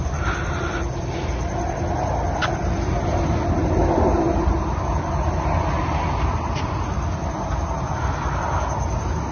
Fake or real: real